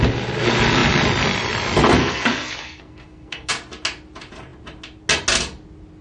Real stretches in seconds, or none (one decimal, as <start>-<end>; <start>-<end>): 0.0-2.0; 3.5-6.0